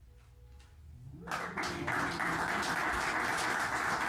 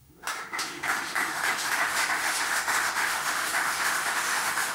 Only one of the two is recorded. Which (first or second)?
first